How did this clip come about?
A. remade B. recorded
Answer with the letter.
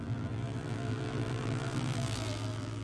A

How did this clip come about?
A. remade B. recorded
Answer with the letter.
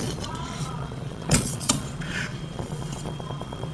A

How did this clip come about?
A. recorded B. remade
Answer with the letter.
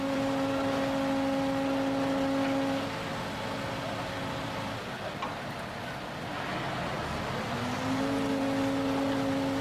A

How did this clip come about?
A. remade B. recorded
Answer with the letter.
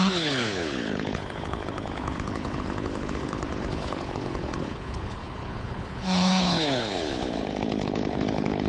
A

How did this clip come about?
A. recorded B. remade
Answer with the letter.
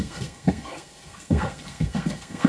B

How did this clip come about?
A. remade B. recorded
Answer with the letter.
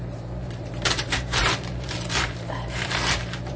A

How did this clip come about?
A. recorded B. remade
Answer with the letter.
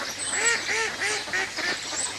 A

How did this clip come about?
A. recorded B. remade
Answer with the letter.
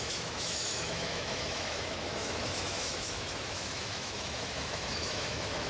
B